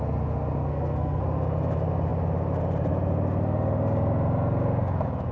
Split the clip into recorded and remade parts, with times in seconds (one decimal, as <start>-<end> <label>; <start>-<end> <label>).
0.0-0.6 recorded; 0.6-1.2 remade; 1.2-5.3 recorded